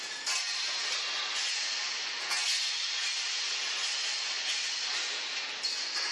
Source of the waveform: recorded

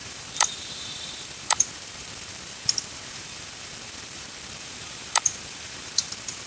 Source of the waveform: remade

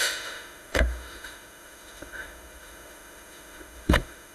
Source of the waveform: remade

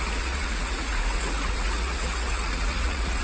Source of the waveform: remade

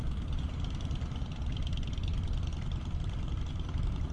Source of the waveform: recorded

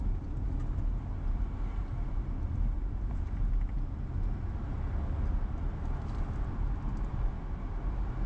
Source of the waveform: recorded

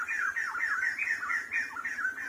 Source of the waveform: recorded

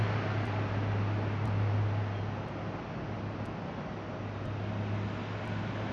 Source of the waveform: recorded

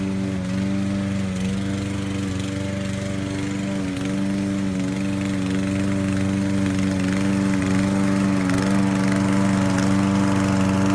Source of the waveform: recorded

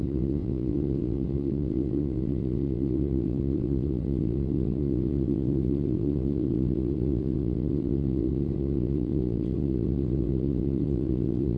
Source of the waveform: remade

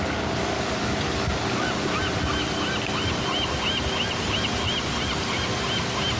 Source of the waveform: recorded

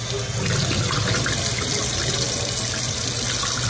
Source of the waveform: recorded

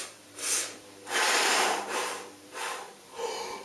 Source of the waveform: remade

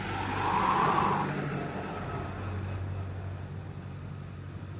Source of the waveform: recorded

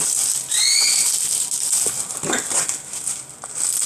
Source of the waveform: recorded